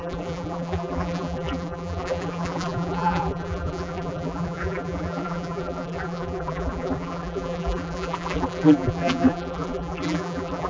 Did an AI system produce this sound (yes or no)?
yes